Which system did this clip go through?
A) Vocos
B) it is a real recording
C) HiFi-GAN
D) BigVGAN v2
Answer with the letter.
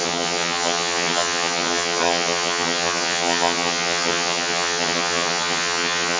C